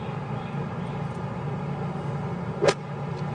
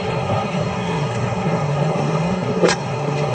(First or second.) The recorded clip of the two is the first